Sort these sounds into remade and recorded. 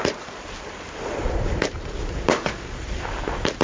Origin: remade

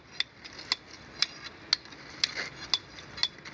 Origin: recorded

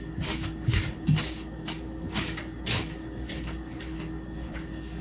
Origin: remade